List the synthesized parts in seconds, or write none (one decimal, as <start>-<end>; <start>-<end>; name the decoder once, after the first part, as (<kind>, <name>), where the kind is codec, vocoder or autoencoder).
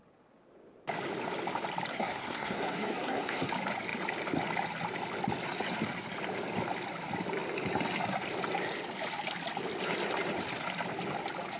1.9-3.5 (codec, SNAC)